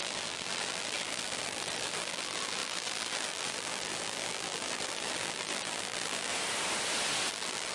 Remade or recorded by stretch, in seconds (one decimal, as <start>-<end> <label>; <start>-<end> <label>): 0.0-6.3 remade; 6.3-7.3 recorded; 7.3-7.7 remade